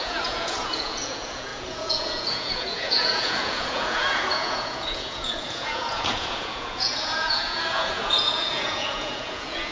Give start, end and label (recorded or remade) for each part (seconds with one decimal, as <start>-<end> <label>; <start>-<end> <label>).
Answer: 0.0-9.7 remade